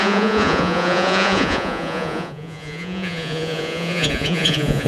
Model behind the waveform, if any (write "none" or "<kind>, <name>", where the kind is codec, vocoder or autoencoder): vocoder, Vocos